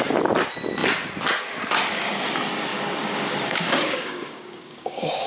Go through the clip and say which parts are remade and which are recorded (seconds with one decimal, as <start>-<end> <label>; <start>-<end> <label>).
0.0-2.7 recorded; 2.7-5.3 remade